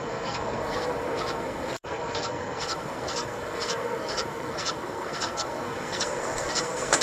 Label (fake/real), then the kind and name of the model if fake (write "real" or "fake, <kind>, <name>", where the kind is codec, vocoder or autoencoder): fake, codec, SNAC